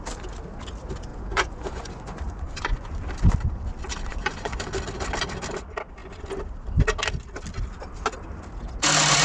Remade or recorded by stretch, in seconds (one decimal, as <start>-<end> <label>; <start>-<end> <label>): 0.0-1.1 recorded; 1.1-3.0 remade; 3.0-4.1 recorded; 4.1-4.7 remade; 4.7-9.2 recorded